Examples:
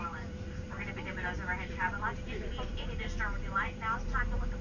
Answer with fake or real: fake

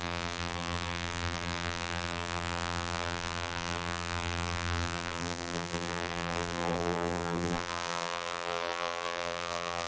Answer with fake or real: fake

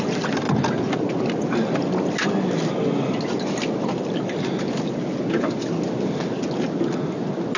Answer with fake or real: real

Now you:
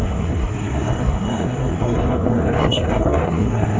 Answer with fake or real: fake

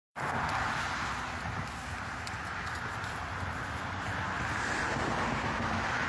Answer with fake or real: real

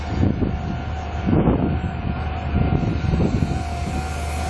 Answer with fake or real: real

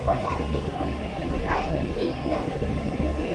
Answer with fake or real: fake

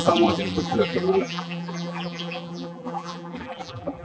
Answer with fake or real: fake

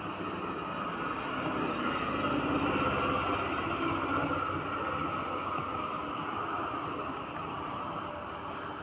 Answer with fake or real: real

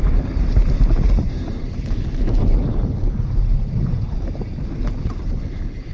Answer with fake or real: real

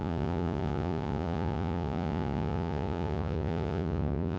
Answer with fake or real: fake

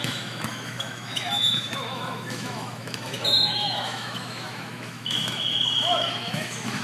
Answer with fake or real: fake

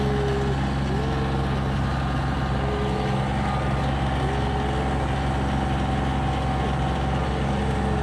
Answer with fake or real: real